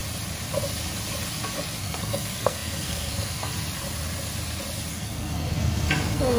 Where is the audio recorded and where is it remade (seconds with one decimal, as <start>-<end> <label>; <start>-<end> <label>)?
0.0-1.8 recorded; 1.8-3.5 remade; 3.5-4.9 recorded; 4.9-6.4 remade